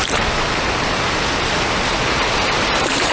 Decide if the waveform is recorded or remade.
remade